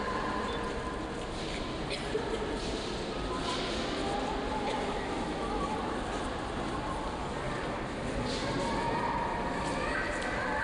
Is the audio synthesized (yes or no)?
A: no